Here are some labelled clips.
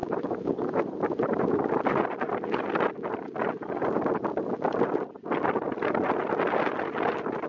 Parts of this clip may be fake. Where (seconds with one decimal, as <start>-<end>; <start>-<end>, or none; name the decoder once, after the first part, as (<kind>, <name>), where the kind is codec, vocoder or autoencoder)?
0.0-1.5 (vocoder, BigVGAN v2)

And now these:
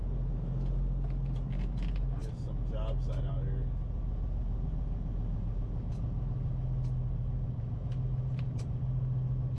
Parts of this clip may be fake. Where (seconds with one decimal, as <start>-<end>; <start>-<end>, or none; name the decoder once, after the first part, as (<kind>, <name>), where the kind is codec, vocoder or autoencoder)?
none

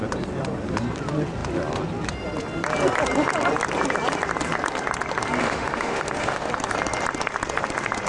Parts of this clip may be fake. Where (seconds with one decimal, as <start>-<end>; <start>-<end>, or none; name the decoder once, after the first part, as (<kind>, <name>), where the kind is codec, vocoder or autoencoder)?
5.4-6.5 (autoencoder, DAC-VAE)

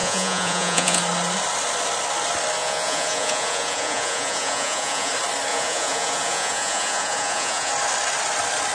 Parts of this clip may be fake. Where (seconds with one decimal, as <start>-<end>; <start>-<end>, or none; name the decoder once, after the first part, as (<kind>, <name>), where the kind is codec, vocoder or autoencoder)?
0.0-1.0 (vocoder, Vocos); 2.6-5.1; 5.5-7.7

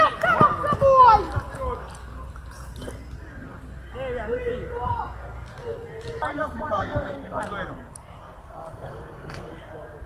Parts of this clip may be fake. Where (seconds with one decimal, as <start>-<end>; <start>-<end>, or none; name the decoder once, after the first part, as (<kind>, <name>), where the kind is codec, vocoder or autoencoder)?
6.3-7.4 (codec, SNAC); 8.4-9.6

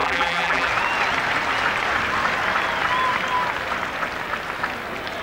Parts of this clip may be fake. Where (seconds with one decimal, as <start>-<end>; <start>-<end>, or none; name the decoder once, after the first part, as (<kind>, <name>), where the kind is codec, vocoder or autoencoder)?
0.0-0.7 (vocoder, BigVGAN v2)

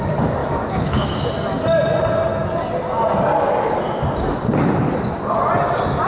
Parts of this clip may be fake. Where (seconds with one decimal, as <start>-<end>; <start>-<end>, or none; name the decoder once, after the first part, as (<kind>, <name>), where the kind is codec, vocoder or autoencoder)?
0.4-1.3 (autoencoder, DAC-VAE)

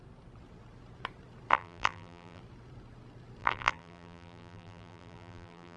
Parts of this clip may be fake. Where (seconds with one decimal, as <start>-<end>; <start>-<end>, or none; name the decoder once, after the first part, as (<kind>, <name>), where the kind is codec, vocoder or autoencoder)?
1.5-2.4 (vocoder, BigVGAN v2); 3.4-5.8